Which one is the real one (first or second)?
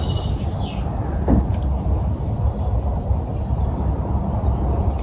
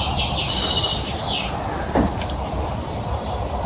first